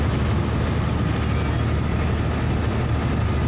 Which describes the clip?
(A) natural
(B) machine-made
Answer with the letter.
A